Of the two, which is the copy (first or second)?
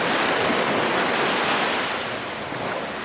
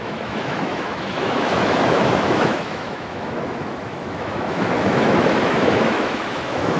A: second